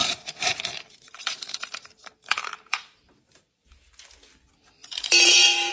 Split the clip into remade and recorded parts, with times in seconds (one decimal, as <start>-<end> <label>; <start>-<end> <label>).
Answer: 0.0-3.4 remade; 3.4-4.8 recorded; 4.8-5.7 remade

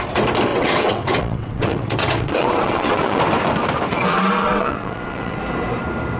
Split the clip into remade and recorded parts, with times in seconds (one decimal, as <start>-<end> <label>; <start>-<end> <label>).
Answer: 0.0-0.5 recorded; 0.5-3.2 remade; 3.2-3.9 recorded; 3.9-5.4 remade; 5.4-6.2 recorded

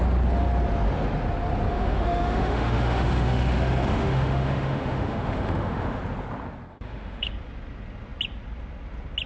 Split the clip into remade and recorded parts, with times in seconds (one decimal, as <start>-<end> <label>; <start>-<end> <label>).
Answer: 0.0-1.7 recorded; 1.7-6.0 remade; 6.0-6.7 recorded; 6.7-7.3 remade; 7.3-9.3 recorded